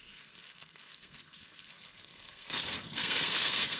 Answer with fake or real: fake